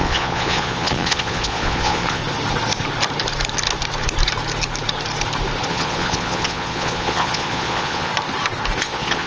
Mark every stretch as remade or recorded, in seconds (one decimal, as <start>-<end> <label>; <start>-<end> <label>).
0.0-2.2 remade; 2.2-5.7 recorded; 5.7-8.1 remade; 8.1-8.8 recorded; 8.8-9.3 remade